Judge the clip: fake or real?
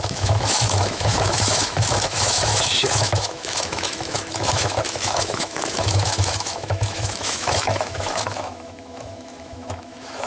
fake